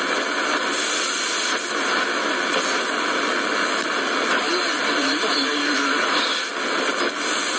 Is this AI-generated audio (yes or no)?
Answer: no